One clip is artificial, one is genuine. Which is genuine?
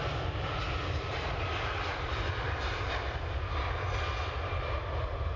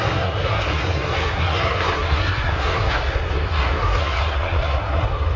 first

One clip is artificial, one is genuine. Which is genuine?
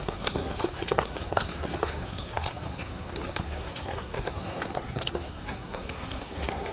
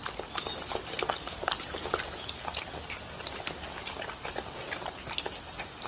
second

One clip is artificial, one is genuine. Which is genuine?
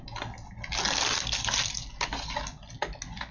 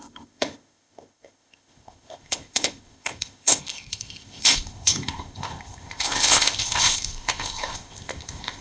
first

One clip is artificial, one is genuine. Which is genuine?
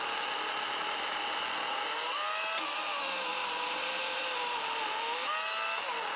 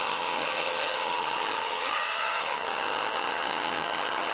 first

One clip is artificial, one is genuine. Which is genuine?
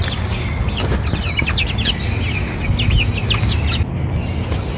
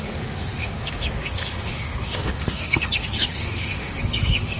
first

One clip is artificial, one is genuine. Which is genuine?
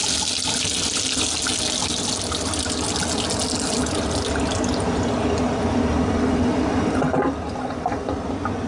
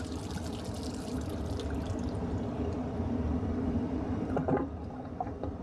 first